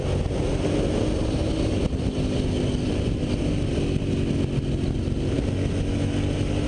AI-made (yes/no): no